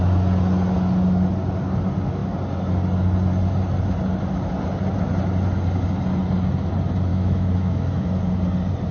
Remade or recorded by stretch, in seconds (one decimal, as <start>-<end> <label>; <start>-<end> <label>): 0.0-7.1 recorded; 7.1-8.2 remade; 8.2-8.9 recorded